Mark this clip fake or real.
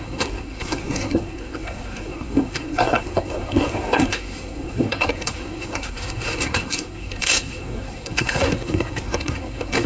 fake